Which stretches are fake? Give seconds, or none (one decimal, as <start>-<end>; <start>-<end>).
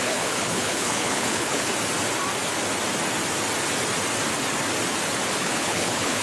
0.0-1.7; 5.4-6.2